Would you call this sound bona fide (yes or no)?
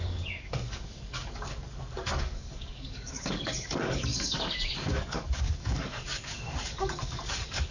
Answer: no